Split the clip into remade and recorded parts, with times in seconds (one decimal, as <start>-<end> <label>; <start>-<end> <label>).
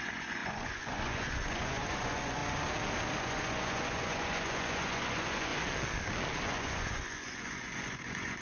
0.0-2.4 remade; 2.4-3.2 recorded; 3.2-5.5 remade; 5.5-6.4 recorded; 6.4-8.4 remade